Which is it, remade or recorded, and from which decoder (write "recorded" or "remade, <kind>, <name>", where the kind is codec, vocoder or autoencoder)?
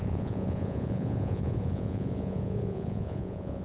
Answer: remade, vocoder, Vocos